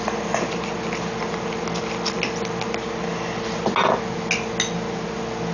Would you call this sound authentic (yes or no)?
yes